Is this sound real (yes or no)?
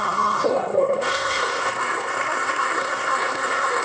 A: no